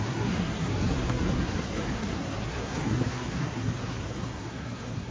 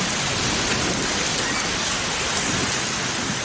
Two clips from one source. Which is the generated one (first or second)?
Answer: first